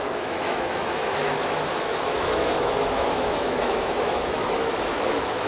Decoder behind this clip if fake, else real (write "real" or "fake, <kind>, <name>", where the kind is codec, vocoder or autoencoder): fake, autoencoder, DAC-VAE